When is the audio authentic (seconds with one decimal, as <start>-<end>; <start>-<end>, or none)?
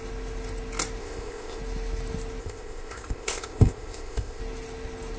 0.0-1.0; 1.6-2.4; 4.4-5.2